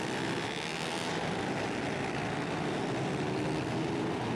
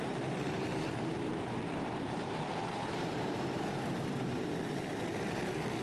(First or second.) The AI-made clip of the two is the second